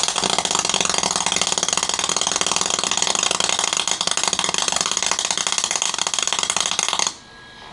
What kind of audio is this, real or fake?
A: real